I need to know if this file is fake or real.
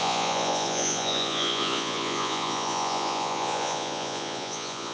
fake